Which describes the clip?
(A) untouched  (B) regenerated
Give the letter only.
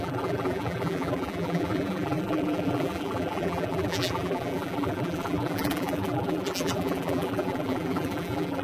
B